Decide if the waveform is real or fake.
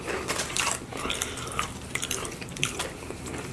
fake